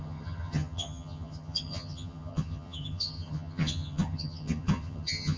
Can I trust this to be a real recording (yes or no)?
no